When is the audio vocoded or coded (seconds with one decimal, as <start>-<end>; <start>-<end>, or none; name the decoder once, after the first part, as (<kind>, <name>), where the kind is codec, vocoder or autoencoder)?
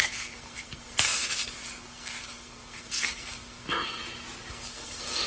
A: 0.0-4.0 (codec, SNAC); 4.5-5.3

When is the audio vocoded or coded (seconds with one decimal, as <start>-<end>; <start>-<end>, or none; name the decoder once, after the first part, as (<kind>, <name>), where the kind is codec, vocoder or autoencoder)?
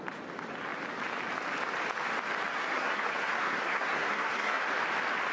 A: 2.5-4.6 (codec, SNAC)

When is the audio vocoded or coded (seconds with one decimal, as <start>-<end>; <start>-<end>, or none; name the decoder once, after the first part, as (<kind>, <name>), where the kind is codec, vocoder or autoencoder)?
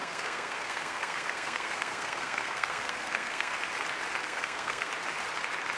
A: 0.0-3.5 (codec, SNAC); 4.2-4.9